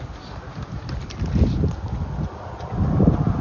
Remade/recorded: recorded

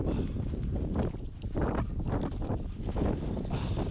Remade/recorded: recorded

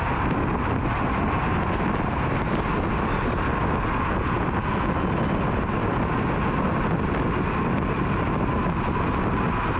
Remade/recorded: recorded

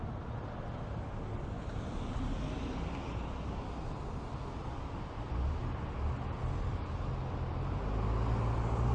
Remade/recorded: recorded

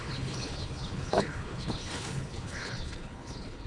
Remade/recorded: remade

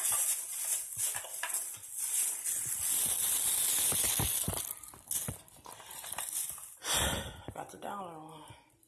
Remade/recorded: recorded